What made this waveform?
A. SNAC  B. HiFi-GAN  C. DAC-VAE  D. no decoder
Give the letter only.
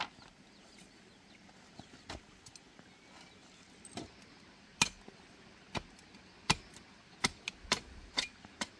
D